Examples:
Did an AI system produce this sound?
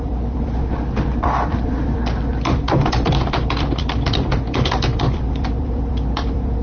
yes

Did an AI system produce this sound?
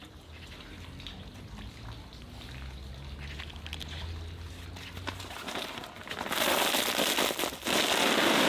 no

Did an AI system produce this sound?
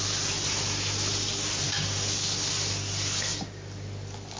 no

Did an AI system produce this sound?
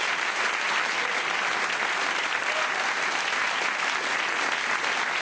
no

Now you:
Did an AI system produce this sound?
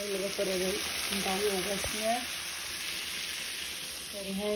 no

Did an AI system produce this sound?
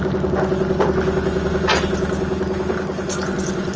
no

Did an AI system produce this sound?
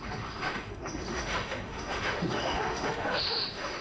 yes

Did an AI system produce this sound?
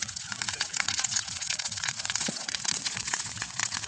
yes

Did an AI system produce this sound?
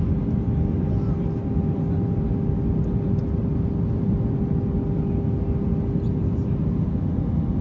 no